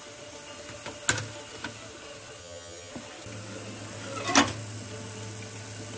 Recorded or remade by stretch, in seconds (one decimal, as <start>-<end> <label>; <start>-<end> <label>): 0.0-2.4 recorded; 2.4-2.9 remade; 2.9-6.0 recorded